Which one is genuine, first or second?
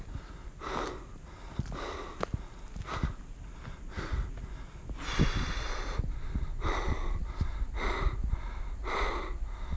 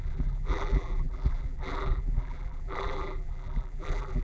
first